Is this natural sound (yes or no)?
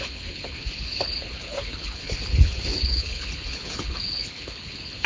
no